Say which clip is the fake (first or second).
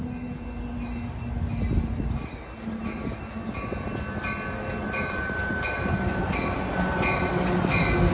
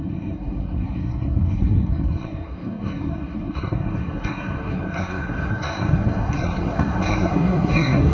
second